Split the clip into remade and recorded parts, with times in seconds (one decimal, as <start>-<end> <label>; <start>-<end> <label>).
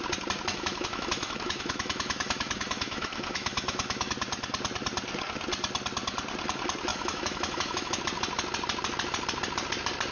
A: 0.0-0.5 recorded; 0.5-4.1 remade; 4.1-6.9 recorded; 6.9-8.0 remade; 8.0-10.1 recorded